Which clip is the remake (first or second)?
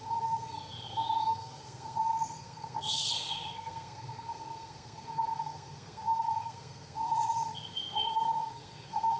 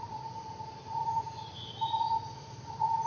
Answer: first